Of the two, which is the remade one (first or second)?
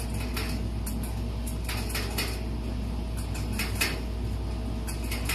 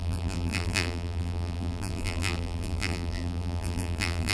second